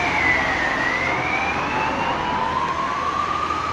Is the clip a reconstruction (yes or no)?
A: no